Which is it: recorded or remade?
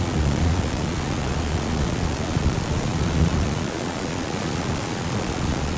remade